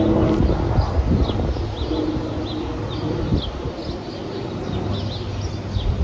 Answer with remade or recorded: recorded